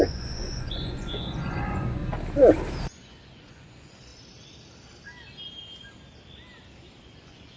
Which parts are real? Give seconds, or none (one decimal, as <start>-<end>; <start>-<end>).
2.0-2.8; 4.1-7.0